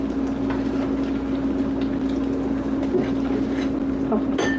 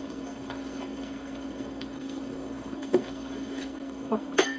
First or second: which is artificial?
second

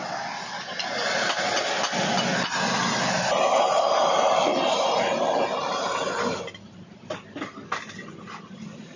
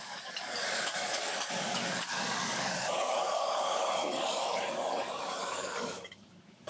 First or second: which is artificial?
second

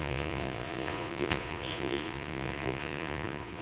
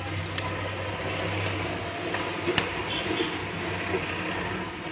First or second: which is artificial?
first